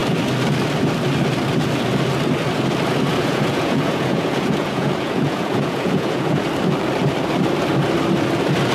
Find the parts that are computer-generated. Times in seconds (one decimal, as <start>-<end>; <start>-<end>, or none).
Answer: 3.1-6.4